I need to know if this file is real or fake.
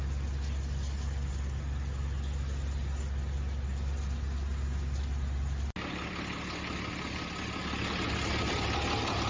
real